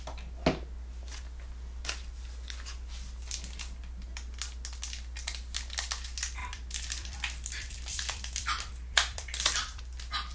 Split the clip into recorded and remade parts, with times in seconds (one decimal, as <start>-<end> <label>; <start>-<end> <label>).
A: 0.0-6.4 recorded; 6.4-9.8 remade; 9.8-10.3 recorded